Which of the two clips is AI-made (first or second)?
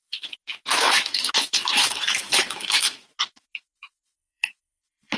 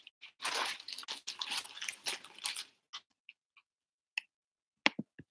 first